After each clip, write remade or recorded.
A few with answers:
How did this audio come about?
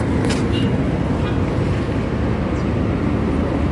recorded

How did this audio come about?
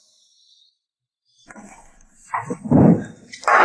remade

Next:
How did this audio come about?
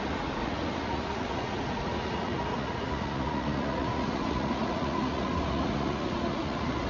remade